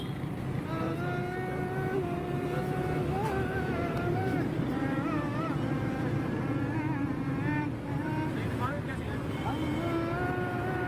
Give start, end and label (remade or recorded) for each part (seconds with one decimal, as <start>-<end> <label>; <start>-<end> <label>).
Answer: 0.0-3.5 recorded; 3.5-6.4 remade; 6.4-10.9 recorded